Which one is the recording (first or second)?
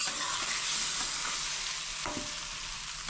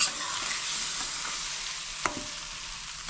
first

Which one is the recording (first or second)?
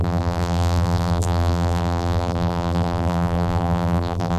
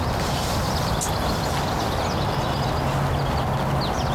second